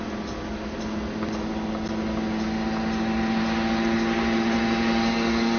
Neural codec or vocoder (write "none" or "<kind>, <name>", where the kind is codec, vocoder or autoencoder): none